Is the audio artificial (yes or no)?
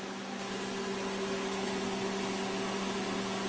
no